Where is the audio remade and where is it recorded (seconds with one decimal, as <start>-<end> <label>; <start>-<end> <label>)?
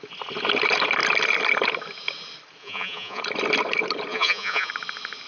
0.0-2.6 recorded; 2.6-3.2 remade; 3.2-4.1 recorded; 4.1-4.7 remade; 4.7-5.3 recorded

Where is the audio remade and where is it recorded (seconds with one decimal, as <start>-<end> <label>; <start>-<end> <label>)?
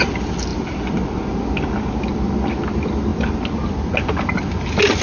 0.0-5.0 recorded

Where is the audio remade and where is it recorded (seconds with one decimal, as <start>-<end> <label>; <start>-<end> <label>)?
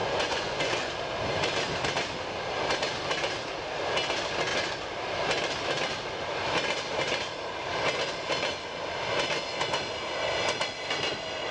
0.0-0.9 remade; 0.9-11.5 recorded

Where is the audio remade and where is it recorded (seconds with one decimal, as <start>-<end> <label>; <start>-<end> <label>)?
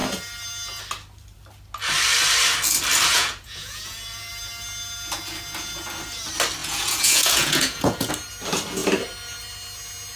0.0-3.1 recorded; 3.1-4.3 remade; 4.3-6.6 recorded; 6.6-8.1 remade; 8.1-10.2 recorded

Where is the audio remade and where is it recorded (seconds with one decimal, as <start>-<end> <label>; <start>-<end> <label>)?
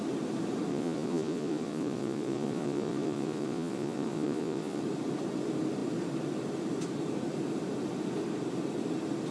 0.0-0.7 recorded; 0.7-4.8 remade; 4.8-9.3 recorded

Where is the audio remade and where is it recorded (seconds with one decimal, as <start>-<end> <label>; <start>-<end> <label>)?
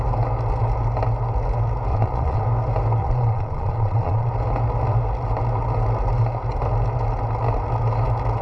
0.0-1.9 recorded; 1.9-2.4 remade; 2.4-3.0 recorded; 3.0-4.3 remade; 4.3-8.4 recorded